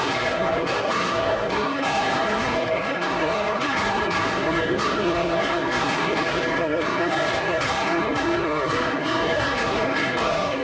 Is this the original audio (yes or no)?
no